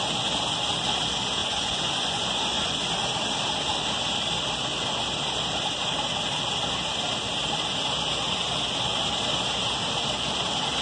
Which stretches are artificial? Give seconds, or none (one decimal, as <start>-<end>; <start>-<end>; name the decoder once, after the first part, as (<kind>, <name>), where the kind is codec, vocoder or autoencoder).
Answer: 1.4-2.9 (vocoder, Vocos)